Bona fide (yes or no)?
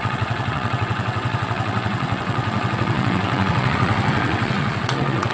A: no